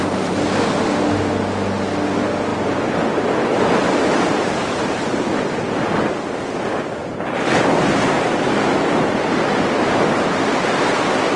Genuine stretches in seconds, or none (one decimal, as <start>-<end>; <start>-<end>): 0.0-11.4

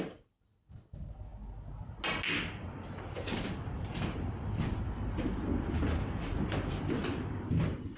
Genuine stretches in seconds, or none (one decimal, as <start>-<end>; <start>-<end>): 1.3-2.3; 7.0-7.6

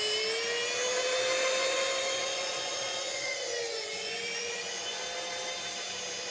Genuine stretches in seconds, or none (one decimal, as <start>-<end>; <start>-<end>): 0.0-1.6; 5.0-6.3

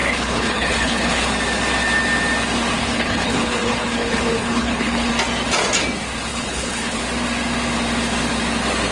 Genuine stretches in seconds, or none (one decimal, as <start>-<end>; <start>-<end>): 1.3-2.8; 5.1-6.3; 7.0-8.9

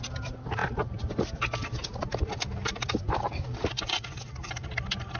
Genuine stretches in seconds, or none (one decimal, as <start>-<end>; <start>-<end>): none

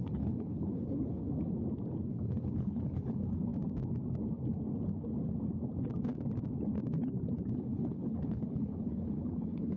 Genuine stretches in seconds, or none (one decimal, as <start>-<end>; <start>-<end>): 1.2-2.1; 3.5-7.5

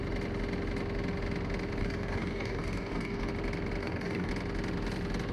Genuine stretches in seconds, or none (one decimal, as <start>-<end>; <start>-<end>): 0.0-1.8; 3.3-3.8; 4.3-5.3

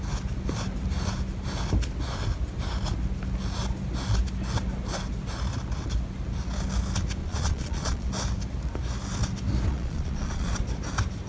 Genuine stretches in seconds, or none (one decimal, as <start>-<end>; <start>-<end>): 0.0-7.2; 8.1-9.7; 10.6-11.3